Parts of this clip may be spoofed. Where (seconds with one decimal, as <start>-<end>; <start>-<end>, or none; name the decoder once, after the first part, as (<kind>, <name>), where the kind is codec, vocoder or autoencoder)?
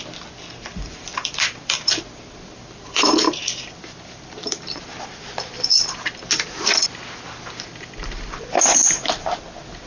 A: 0.7-5.9 (vocoder, BigVGAN v2); 7.7-9.2